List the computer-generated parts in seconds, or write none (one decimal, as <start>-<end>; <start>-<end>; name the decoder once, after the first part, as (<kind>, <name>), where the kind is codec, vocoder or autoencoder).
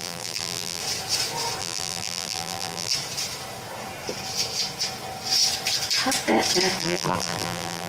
0.0-0.8 (vocoder, BigVGAN v2); 1.6-2.9; 6.8-7.9